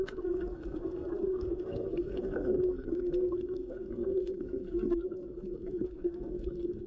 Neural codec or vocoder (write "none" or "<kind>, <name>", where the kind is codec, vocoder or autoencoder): codec, SNAC